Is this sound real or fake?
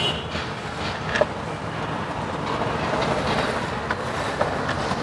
real